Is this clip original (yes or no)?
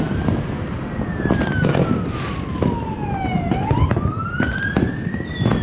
yes